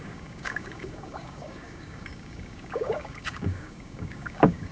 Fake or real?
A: fake